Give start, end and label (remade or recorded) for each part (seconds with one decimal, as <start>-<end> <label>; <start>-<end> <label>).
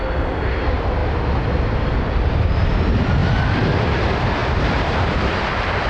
0.0-4.4 recorded; 4.4-5.9 remade